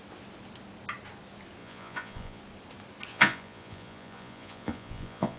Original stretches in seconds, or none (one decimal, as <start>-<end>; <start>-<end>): 0.0-1.6; 2.4-3.1